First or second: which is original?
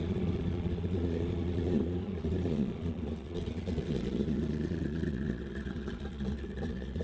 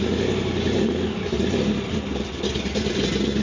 second